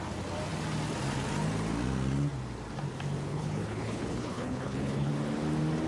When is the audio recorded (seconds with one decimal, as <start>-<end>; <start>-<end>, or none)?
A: 0.0-3.3; 5.1-5.9